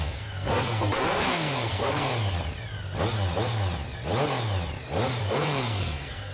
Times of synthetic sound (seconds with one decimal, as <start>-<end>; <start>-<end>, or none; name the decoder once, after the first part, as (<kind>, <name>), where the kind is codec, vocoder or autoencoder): 0.0-2.1 (codec, SNAC); 5.2-6.3